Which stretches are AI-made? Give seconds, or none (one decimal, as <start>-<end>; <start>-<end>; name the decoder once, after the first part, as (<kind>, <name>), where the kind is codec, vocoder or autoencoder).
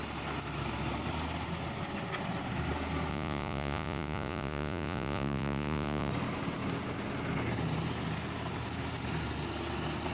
3.1-6.1 (vocoder, Vocos)